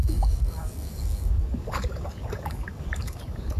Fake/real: fake